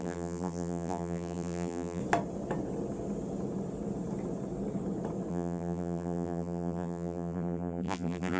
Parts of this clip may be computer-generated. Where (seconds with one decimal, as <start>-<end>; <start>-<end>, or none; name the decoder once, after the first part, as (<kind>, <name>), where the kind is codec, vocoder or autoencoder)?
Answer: 0.0-2.0 (vocoder, BigVGAN v2); 5.3-8.4